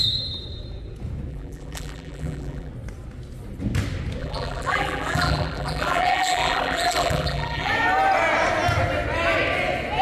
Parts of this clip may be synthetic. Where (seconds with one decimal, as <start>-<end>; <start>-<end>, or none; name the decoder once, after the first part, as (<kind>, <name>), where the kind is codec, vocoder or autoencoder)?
1.3-2.7 (vocoder, BigVGAN v2); 4.2-7.7